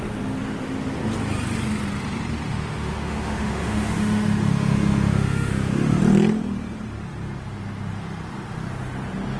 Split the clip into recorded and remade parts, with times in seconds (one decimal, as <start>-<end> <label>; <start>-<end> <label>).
0.0-2.5 recorded; 2.5-6.0 remade; 6.0-9.4 recorded